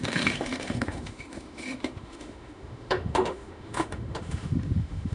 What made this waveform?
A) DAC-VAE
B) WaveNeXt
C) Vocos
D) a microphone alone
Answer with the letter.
A